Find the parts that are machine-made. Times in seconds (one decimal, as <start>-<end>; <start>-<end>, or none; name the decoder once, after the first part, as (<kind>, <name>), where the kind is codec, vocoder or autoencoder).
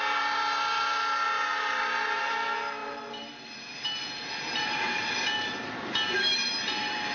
0.0-7.1 (vocoder, BigVGAN v2)